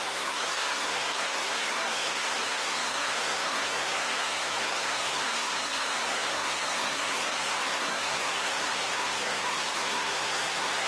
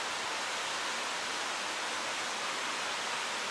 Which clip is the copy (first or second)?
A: first